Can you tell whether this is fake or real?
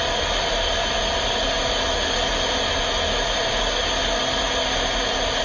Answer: real